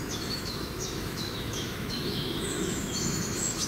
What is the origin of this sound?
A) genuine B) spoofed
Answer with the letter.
B